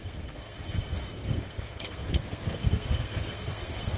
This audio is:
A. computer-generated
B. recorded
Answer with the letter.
A